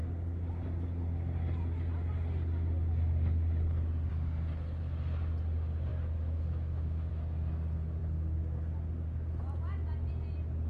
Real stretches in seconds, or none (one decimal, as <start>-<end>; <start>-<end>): 0.0-5.9; 7.1-10.7